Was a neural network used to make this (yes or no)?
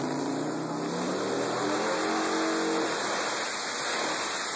no